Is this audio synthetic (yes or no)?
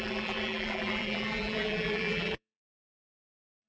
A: yes